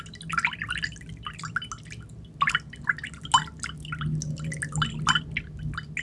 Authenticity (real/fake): real